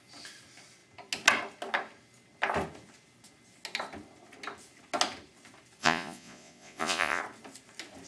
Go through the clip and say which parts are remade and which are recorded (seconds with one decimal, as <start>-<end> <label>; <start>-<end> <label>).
0.0-5.8 recorded; 5.8-7.2 remade; 7.2-8.1 recorded